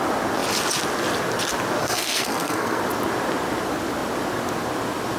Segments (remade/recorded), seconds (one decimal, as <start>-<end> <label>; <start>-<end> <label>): 0.0-1.8 recorded; 1.8-2.8 remade; 2.8-5.2 recorded